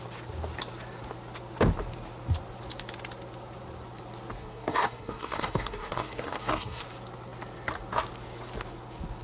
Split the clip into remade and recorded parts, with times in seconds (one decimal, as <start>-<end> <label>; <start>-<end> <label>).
0.0-4.4 recorded; 4.4-6.8 remade; 6.8-9.2 recorded